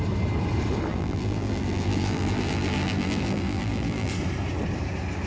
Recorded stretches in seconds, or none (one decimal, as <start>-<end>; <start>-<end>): 0.0-0.9; 4.1-5.3